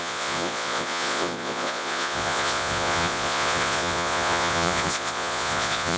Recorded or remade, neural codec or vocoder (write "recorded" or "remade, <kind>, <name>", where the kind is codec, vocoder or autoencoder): remade, vocoder, Vocos